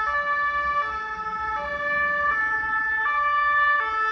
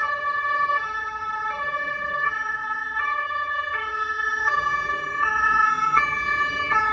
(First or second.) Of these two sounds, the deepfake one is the second